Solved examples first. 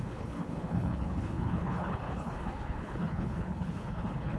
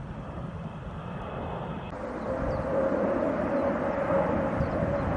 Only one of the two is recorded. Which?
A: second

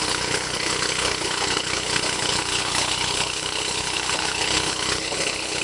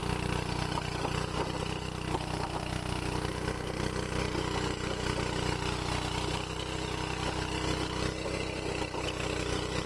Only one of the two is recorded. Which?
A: second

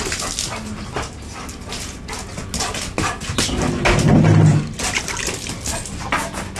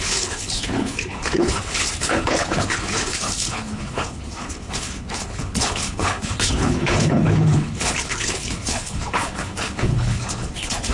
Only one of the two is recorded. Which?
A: first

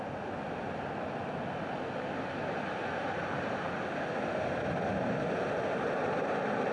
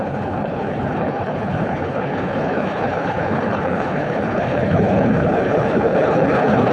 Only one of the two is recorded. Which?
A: first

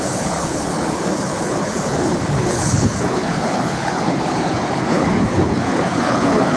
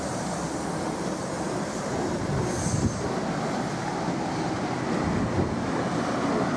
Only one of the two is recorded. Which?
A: second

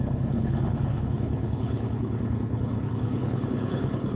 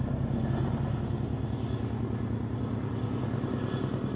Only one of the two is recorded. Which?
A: second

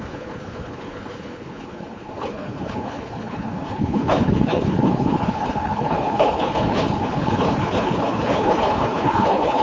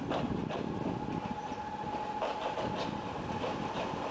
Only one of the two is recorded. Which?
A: second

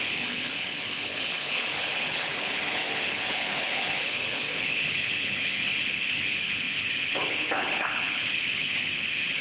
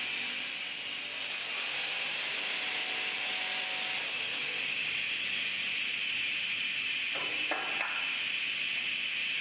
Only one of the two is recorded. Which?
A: second